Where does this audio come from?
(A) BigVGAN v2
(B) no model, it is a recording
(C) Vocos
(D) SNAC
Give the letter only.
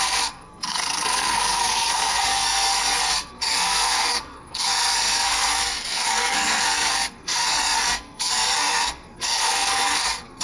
D